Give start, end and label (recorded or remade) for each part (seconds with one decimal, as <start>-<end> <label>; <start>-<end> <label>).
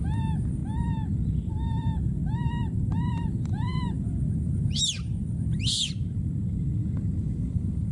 0.0-0.6 remade; 0.6-1.5 recorded; 1.5-2.2 remade; 2.2-3.1 recorded; 3.1-7.9 remade